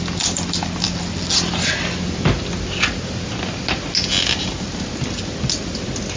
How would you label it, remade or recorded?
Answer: recorded